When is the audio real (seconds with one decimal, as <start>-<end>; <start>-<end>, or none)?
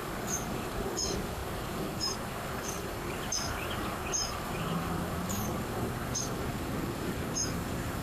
none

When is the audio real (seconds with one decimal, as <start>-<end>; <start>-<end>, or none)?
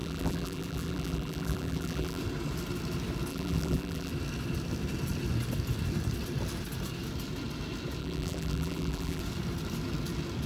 2.2-3.3; 4.1-8.0; 9.2-10.5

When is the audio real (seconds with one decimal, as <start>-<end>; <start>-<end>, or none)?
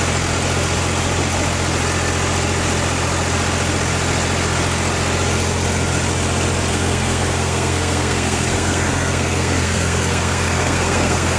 0.0-6.7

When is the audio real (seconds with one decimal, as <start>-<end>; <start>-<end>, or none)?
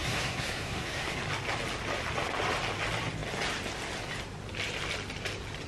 1.2-5.7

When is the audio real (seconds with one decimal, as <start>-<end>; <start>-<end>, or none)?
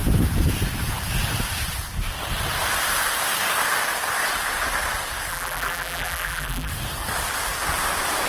0.0-5.3; 6.7-8.3